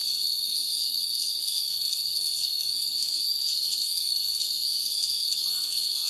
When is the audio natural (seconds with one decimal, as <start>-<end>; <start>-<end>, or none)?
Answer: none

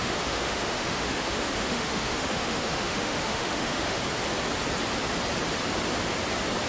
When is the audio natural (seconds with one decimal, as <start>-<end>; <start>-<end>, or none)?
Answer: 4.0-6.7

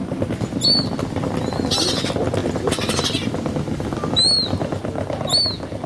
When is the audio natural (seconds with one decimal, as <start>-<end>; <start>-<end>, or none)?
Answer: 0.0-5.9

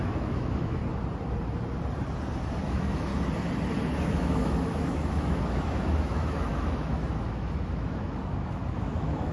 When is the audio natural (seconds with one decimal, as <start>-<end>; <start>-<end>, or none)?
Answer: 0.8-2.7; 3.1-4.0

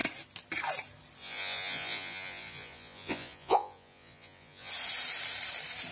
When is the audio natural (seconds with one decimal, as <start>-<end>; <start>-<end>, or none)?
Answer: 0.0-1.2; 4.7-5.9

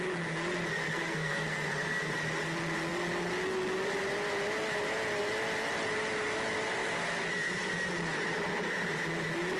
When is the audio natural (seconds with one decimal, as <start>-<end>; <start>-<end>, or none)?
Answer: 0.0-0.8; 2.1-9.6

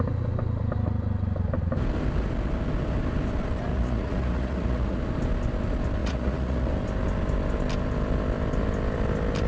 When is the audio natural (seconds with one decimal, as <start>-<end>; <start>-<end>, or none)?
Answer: 0.0-3.7; 5.0-6.0; 6.7-9.5